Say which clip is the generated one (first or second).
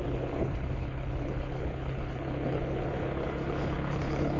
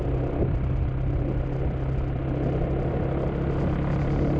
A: first